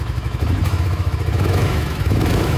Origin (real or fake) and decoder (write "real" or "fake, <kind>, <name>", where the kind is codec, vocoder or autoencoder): fake, autoencoder, DAC-VAE